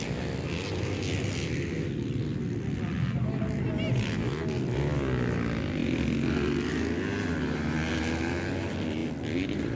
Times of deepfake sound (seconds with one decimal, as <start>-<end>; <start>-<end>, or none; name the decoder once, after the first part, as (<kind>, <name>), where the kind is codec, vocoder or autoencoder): none